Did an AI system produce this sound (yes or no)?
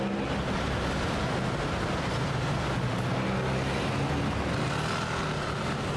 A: no